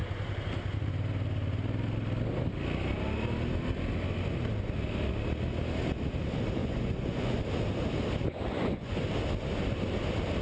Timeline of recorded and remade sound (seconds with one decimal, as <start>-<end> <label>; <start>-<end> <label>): 0.0-6.6 recorded; 6.6-7.4 remade; 7.4-8.5 recorded; 8.5-9.0 remade; 9.0-10.4 recorded